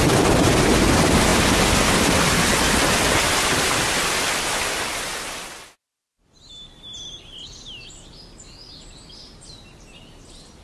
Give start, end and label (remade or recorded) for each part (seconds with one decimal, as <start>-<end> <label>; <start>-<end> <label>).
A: 0.0-10.6 recorded